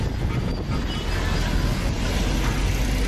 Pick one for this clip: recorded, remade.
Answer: recorded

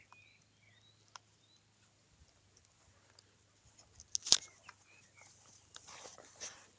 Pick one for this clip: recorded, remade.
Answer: recorded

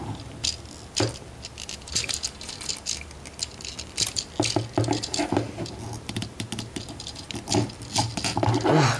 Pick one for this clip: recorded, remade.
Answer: recorded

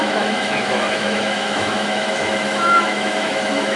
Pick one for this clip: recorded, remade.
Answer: remade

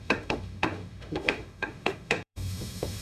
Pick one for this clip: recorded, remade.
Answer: remade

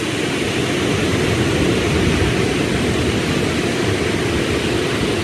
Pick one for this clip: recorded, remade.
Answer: recorded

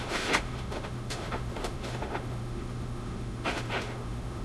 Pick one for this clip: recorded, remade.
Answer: remade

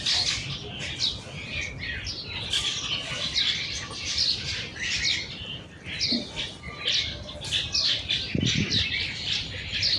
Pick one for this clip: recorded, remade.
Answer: recorded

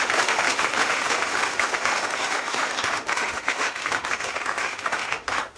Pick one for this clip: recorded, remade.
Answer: remade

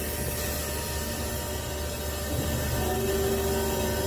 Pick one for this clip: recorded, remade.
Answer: recorded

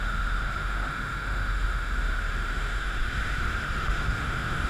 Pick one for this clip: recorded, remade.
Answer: remade